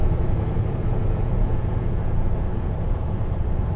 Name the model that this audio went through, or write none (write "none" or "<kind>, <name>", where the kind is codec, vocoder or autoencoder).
vocoder, Vocos